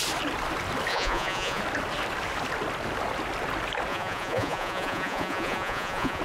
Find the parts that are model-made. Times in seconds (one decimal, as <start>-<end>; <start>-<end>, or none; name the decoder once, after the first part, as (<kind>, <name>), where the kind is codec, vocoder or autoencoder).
0.9-1.6 (vocoder, Vocos); 3.9-6.2